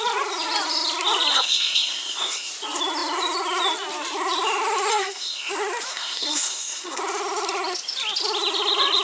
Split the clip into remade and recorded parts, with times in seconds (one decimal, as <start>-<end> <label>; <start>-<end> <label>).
0.0-1.3 recorded; 1.3-2.5 remade; 2.5-4.9 recorded; 4.9-5.5 remade; 5.5-5.9 recorded; 5.9-7.0 remade; 7.0-9.0 recorded